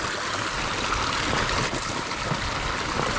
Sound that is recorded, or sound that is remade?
recorded